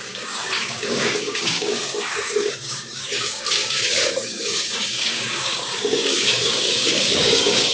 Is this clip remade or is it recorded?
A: remade